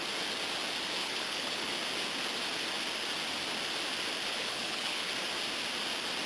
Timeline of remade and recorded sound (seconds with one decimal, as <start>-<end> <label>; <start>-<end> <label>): 0.0-1.0 recorded; 1.0-1.7 remade; 1.7-4.3 recorded; 4.3-5.1 remade; 5.1-6.3 recorded